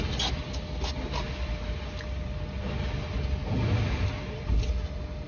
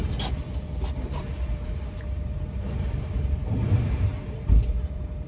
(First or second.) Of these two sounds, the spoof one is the second